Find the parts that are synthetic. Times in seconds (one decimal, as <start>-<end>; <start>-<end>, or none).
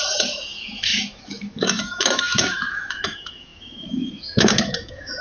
0.0-5.2